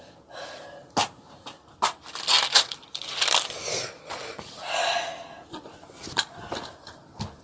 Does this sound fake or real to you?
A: real